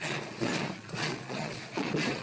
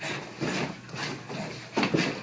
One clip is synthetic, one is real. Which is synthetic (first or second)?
first